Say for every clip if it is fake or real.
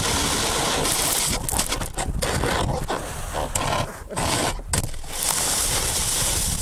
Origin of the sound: real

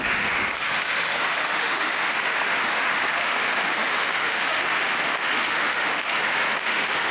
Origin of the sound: fake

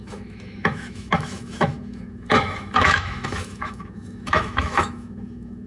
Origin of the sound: fake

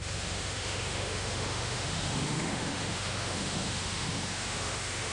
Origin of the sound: fake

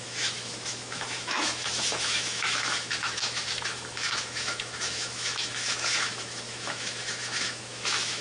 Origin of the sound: fake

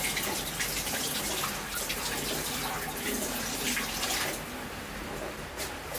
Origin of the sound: real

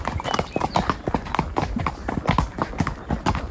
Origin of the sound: real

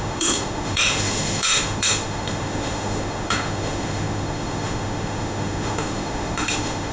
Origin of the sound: fake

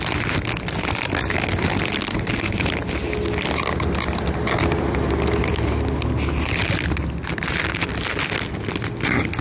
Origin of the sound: real